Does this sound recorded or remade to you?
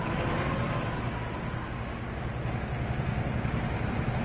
recorded